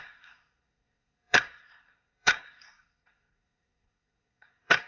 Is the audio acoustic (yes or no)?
no